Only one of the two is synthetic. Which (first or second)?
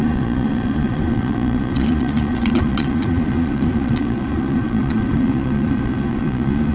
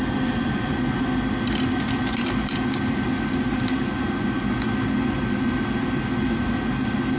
first